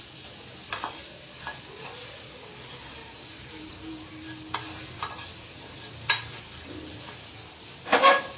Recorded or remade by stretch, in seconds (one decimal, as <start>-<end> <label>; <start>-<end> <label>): 0.0-3.0 recorded; 3.0-3.7 remade; 3.7-8.4 recorded